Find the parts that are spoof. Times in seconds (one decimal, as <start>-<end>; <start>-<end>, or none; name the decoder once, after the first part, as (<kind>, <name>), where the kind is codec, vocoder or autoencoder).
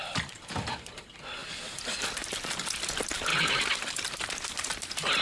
0.0-1.4 (vocoder, BigVGAN v2); 1.9-5.2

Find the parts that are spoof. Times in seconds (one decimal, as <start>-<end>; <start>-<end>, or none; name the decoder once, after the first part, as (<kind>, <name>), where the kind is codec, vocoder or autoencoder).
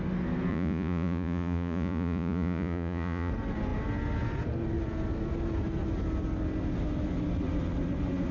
0.5-3.3 (vocoder, Vocos)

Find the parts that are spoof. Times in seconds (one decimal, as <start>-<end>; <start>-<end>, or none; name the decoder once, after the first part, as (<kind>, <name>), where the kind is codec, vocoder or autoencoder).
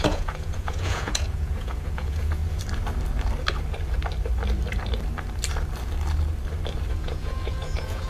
0.0-2.4 (vocoder, Vocos); 6.9-8.1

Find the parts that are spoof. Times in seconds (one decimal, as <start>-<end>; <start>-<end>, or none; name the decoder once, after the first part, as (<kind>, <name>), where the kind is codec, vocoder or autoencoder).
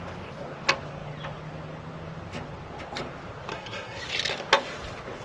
3.5-4.0 (codec, SNAC)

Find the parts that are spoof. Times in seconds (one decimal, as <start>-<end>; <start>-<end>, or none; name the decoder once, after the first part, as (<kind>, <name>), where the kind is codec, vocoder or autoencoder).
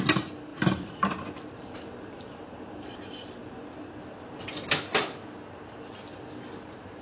0.5-4.7 (vocoder, BigVGAN v2)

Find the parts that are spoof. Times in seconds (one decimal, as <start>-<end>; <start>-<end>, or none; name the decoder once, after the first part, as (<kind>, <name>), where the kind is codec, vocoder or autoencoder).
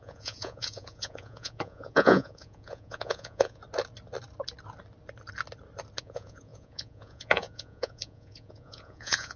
0.0-3.6 (vocoder, Vocos); 6.0-9.4